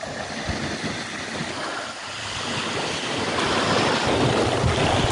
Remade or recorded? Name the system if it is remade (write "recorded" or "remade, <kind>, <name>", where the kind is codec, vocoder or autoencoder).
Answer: recorded